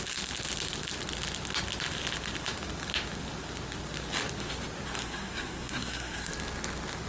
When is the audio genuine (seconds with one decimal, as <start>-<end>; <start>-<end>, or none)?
0.0-5.0; 6.3-7.1